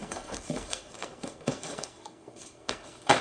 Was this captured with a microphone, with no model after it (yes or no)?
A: no